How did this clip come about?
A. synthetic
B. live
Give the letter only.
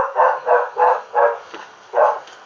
A